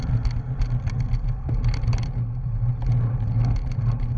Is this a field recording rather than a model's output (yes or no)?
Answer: yes